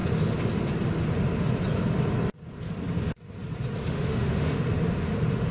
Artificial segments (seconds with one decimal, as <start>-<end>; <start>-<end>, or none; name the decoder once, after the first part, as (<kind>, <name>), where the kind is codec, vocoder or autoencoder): 3.8-4.6 (autoencoder, DAC-VAE)